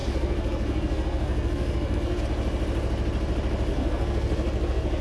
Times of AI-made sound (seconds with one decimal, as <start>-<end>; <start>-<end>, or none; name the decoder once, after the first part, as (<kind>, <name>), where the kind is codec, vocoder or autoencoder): 0.0-2.2 (codec, SNAC); 3.7-5.0